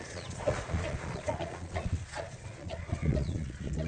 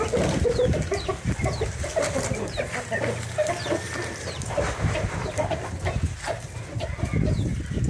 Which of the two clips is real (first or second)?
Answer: second